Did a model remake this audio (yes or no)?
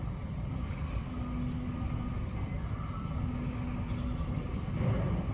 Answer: no